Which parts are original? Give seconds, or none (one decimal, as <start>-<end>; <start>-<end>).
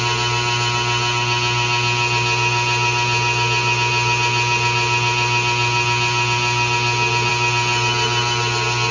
0.0-8.9